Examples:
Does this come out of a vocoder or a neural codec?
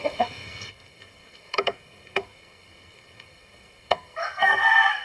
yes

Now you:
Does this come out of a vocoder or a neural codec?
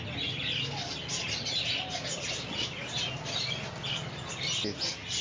no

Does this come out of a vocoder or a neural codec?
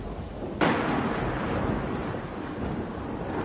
no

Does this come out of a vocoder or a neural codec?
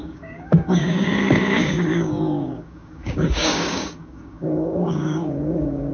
yes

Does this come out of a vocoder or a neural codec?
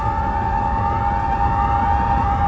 no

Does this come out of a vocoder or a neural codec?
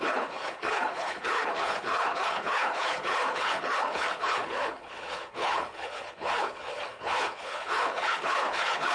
yes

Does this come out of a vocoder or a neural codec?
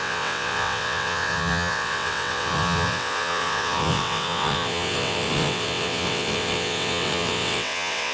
yes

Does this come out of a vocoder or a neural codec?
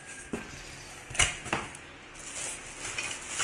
no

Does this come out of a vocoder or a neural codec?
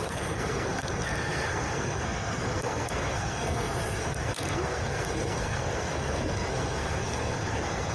yes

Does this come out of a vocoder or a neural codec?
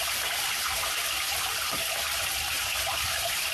no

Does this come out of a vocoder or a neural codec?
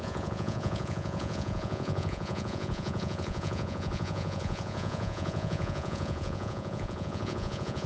yes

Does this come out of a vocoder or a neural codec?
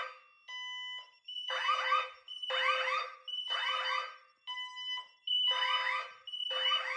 no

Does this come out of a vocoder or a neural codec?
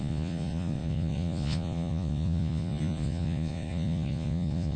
yes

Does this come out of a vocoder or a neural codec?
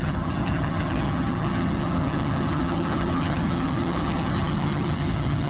yes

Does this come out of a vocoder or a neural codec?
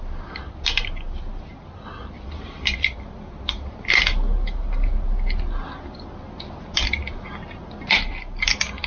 no